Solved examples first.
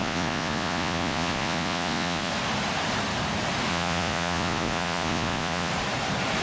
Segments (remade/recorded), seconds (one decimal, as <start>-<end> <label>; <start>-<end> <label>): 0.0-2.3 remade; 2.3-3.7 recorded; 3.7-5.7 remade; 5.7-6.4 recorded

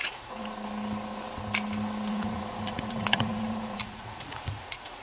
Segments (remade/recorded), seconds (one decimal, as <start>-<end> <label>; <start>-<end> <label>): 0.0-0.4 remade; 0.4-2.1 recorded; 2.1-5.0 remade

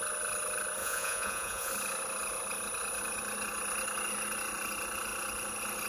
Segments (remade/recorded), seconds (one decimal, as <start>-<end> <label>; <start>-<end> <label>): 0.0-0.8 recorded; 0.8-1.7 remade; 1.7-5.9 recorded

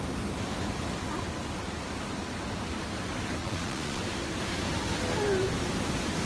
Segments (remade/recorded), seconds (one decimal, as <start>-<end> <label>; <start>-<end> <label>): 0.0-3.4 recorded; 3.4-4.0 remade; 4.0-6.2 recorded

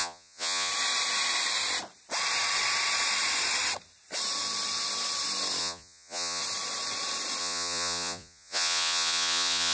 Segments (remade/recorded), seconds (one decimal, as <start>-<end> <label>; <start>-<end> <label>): 0.0-0.7 remade; 0.7-5.6 recorded; 5.6-6.4 remade; 6.4-7.4 recorded; 7.4-9.7 remade